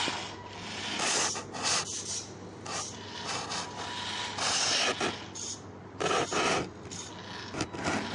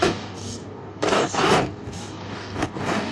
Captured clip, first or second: first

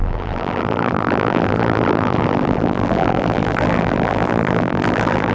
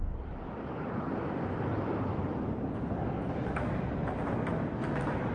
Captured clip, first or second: second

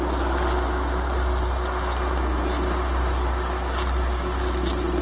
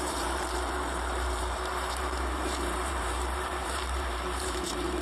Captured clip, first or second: first